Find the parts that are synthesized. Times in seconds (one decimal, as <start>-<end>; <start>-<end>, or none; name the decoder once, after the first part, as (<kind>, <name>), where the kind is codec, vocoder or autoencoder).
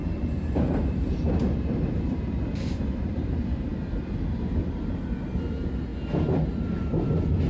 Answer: 0.0-3.7 (vocoder, BigVGAN v2); 4.6-5.9; 6.6-7.5